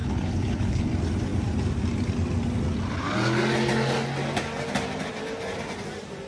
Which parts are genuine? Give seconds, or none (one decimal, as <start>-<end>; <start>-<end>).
0.9-6.3